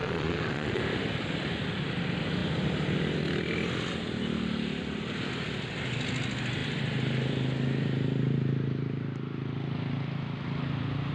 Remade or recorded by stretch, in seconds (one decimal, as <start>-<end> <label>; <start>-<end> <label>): 0.0-0.8 remade; 0.8-11.1 recorded